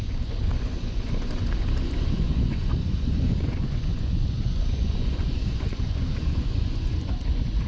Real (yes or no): no